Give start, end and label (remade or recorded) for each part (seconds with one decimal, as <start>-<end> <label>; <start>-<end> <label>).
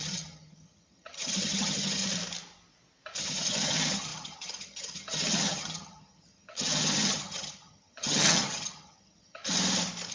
0.0-2.0 remade; 2.0-3.2 recorded; 3.2-9.4 remade; 9.4-10.1 recorded